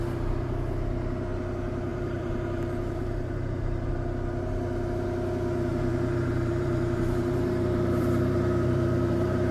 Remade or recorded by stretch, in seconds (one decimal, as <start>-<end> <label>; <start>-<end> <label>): 0.0-1.9 recorded; 1.9-3.9 remade; 3.9-5.7 recorded; 5.7-9.5 remade